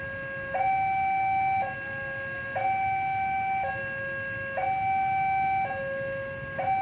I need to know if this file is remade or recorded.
recorded